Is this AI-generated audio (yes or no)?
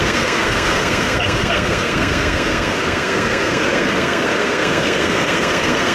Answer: yes